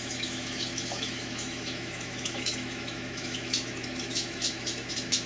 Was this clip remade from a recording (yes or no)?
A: yes